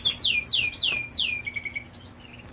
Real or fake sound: real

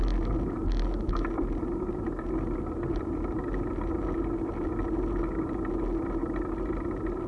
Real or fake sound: real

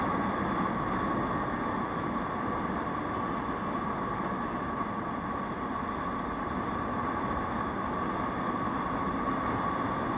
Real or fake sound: real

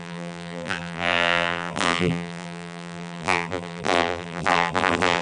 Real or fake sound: fake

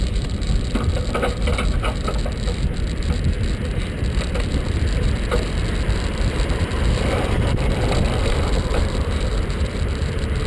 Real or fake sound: fake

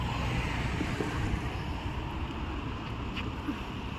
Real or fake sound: fake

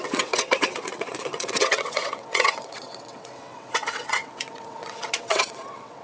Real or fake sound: fake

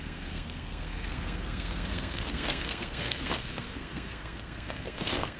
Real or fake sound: fake